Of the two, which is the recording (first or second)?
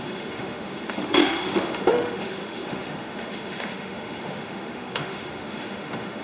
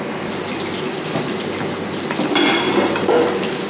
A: second